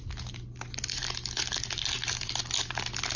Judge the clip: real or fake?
real